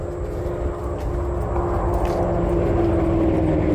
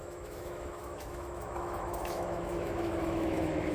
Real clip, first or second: first